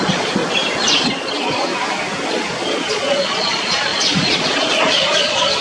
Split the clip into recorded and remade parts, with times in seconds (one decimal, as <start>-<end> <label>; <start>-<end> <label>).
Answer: 0.0-0.4 remade; 0.4-1.2 recorded; 1.2-1.7 remade; 1.7-2.3 recorded; 2.3-5.6 remade